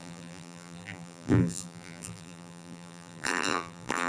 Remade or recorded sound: remade